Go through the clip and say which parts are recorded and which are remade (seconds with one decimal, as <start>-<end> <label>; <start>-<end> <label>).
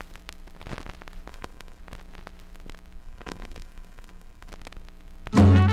0.0-1.3 recorded; 1.3-1.8 remade; 1.8-3.0 recorded; 3.0-4.5 remade; 4.5-5.7 recorded